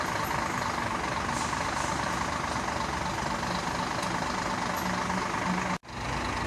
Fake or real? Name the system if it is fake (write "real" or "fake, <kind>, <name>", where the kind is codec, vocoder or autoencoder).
real